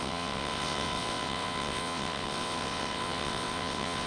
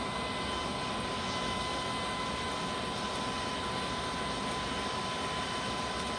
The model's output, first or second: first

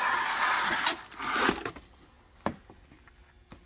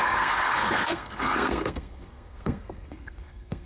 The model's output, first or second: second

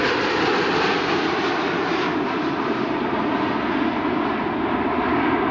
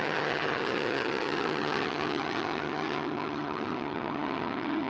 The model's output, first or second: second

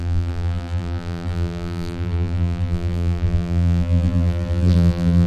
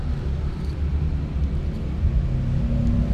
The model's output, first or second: first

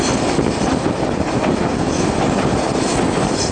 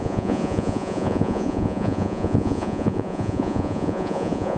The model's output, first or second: second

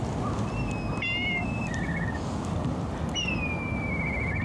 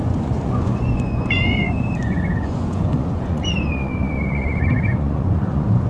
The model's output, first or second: second